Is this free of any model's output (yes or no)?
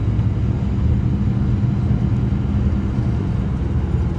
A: yes